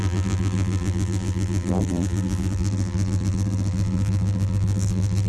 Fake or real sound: fake